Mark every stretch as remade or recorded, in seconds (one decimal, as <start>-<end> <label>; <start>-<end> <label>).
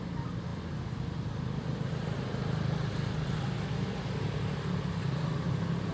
0.0-5.9 recorded